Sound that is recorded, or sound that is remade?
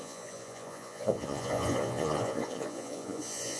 remade